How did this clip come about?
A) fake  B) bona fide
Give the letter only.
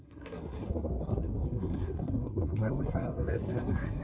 A